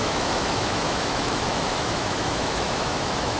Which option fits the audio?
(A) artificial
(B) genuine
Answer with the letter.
A